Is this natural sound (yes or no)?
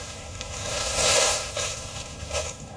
no